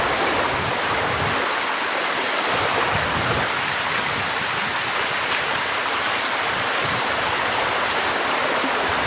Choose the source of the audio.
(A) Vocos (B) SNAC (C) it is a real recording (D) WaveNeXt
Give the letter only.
C